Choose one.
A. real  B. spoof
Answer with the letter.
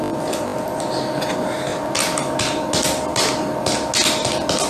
A